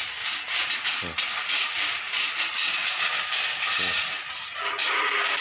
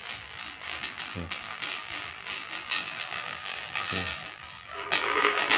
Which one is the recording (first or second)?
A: first